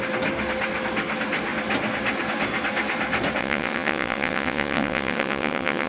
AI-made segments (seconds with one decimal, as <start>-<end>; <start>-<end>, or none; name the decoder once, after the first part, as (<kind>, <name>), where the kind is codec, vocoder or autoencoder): 3.4-5.9 (vocoder, WaveNeXt)